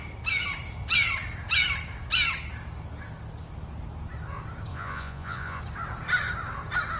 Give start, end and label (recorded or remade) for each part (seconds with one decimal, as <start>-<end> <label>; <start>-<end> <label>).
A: 0.0-4.7 recorded; 4.7-5.6 remade; 5.6-7.0 recorded